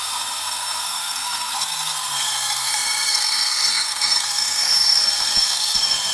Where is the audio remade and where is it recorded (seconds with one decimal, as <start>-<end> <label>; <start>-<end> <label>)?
0.0-6.1 remade